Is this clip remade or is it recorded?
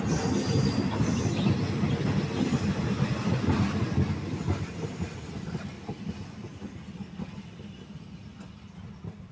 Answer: recorded